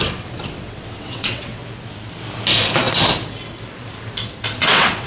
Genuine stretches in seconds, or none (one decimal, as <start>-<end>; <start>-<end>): 1.6-4.6